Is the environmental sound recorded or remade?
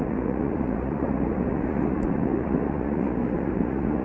remade